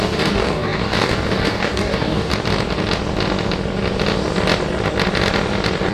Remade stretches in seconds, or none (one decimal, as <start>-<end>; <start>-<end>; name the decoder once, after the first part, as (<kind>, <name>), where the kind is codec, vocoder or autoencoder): 0.0-2.3 (codec, DAC)